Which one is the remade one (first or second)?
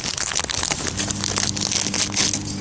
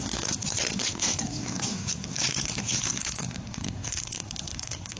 second